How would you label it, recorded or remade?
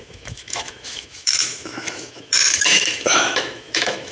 remade